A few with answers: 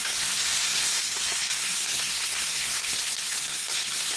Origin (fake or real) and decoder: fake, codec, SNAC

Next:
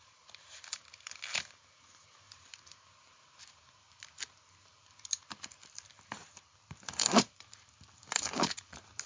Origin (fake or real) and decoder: fake, vocoder, BigVGAN v2